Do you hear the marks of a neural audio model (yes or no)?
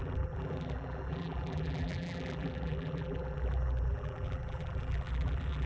yes